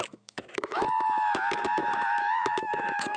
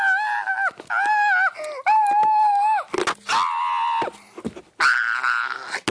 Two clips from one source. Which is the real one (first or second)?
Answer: second